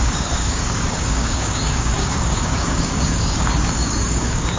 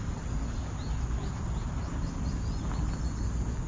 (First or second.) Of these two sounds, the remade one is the first